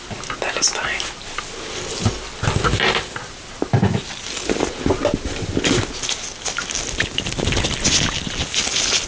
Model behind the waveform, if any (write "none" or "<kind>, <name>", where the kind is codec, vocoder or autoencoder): none